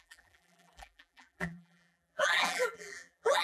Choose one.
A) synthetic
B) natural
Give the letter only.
A